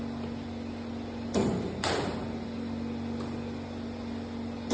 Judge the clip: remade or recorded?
recorded